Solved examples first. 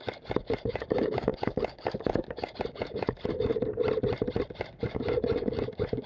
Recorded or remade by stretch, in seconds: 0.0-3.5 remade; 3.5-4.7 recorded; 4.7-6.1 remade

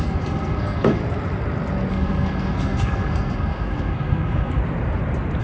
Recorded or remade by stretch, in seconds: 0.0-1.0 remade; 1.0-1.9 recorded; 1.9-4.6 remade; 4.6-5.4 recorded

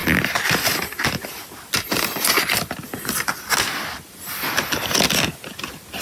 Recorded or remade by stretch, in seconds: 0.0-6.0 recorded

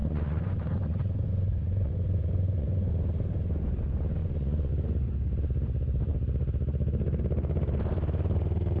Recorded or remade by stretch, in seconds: 0.0-2.9 remade; 2.9-4.2 recorded; 4.2-4.7 remade; 4.7-8.8 recorded

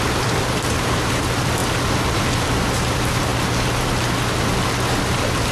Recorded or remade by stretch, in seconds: 0.0-3.3 remade; 3.3-4.9 recorded; 4.9-5.5 remade